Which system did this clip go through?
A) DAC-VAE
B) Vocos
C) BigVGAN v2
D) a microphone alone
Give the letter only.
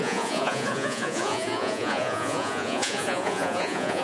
B